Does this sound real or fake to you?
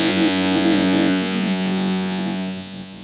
fake